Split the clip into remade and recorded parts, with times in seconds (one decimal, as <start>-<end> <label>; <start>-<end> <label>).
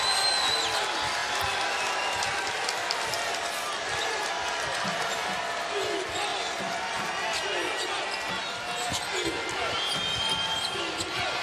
0.0-11.4 recorded